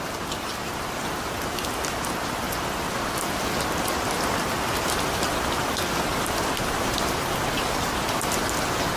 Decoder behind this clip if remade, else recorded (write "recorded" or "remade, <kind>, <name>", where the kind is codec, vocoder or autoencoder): recorded